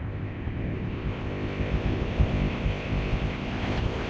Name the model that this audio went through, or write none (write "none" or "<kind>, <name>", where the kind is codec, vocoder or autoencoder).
codec, ZipCodec